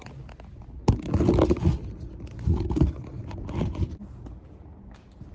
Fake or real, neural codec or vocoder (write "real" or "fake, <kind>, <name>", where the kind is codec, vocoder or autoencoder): real